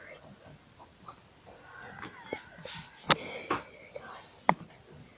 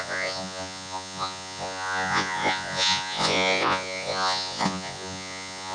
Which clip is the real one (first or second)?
first